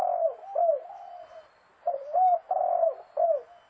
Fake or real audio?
real